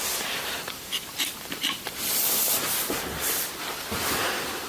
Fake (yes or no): yes